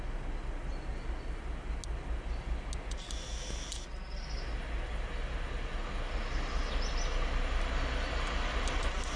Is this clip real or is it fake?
real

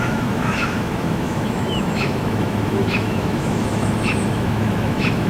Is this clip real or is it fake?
fake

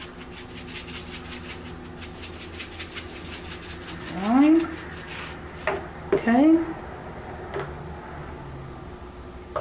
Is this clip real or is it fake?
real